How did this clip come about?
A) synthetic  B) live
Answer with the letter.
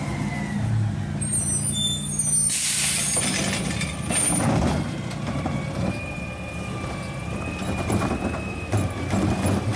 B